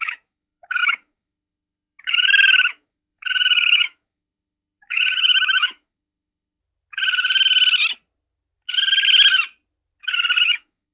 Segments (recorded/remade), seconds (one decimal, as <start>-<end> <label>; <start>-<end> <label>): 0.0-6.6 remade; 6.6-10.4 recorded; 10.4-10.9 remade

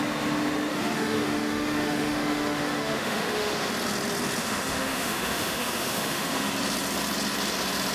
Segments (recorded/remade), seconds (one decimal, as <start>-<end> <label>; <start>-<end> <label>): 0.0-0.7 recorded; 0.7-3.7 remade; 3.7-4.4 recorded; 4.4-6.5 remade; 6.5-7.9 recorded

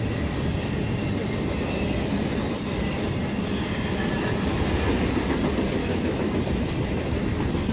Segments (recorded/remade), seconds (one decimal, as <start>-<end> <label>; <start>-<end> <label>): 0.0-5.8 recorded; 5.8-6.4 remade; 6.4-7.7 recorded

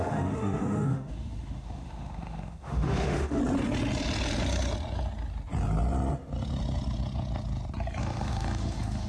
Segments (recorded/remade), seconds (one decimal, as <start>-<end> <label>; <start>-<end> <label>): 0.0-3.4 remade; 3.4-8.0 recorded; 8.0-9.1 remade

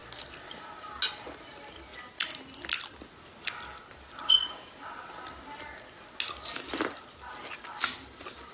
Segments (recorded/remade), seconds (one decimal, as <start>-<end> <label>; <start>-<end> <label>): 0.0-8.5 recorded